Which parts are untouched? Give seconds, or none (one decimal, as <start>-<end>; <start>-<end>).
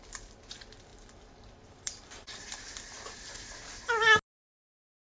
0.0-0.9; 2.6-5.1